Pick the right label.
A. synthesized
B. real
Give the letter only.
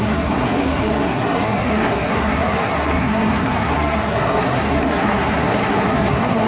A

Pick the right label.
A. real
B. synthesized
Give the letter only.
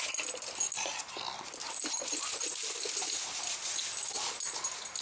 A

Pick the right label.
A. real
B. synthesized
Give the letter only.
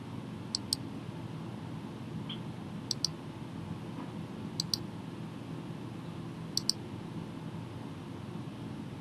A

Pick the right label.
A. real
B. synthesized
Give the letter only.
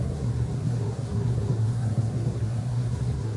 B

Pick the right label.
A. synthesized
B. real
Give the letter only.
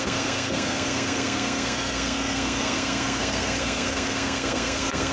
A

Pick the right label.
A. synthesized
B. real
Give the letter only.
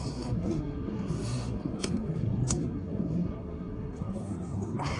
A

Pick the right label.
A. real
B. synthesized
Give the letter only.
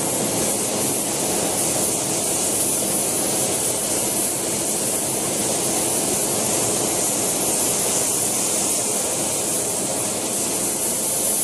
A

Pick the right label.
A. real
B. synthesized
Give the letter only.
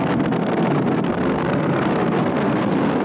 B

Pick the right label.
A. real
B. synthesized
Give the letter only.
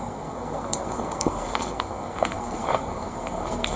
B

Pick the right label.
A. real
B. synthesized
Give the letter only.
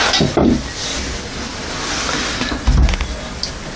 A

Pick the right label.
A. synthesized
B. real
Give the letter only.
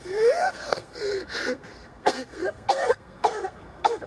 A